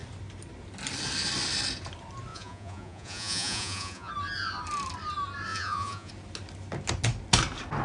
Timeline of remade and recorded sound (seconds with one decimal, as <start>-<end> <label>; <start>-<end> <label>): 0.0-2.3 recorded; 2.3-4.1 remade; 4.1-5.5 recorded; 5.5-6.1 remade; 6.1-7.8 recorded